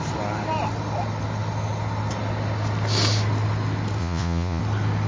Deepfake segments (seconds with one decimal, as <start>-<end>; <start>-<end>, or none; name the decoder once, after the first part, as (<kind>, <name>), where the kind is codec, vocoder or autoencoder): 4.0-4.6 (vocoder, Vocos)